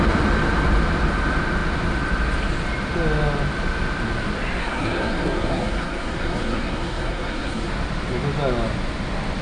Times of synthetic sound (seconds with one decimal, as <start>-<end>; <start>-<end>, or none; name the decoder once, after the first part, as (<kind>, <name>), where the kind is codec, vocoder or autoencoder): 4.6-7.7 (codec, SNAC)